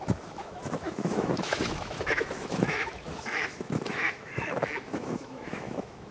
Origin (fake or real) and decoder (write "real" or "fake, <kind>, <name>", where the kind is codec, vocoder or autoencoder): fake, autoencoder, DAC-VAE